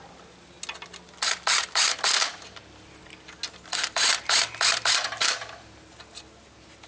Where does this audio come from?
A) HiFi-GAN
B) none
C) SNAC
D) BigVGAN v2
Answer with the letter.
B